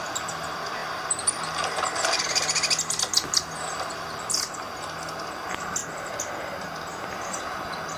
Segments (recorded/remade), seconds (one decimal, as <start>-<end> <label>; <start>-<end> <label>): 0.0-0.8 recorded; 0.8-5.3 remade; 5.3-8.0 recorded